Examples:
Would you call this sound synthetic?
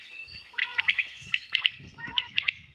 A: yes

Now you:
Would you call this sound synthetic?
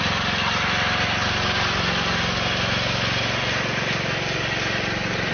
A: no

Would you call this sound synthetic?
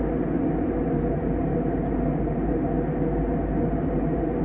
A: no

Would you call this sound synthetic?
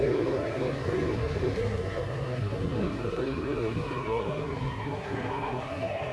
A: yes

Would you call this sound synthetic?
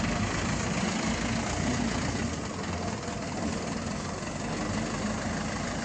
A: no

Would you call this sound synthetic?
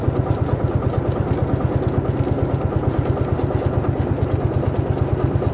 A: no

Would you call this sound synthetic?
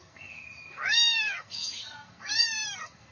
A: yes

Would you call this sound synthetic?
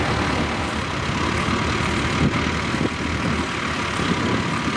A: no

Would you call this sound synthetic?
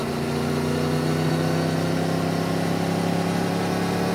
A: no